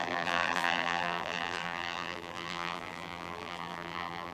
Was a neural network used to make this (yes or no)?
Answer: yes